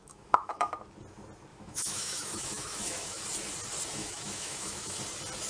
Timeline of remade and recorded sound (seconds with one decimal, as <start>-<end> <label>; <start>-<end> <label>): 0.0-0.7 remade; 0.7-1.5 recorded; 1.5-3.2 remade; 3.2-4.0 recorded; 4.0-5.0 remade; 5.0-5.5 recorded